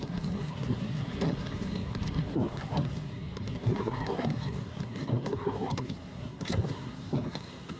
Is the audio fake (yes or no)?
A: yes